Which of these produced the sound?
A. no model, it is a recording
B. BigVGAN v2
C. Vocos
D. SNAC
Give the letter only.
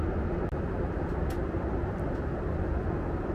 A